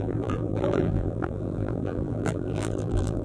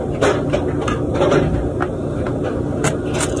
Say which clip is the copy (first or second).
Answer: first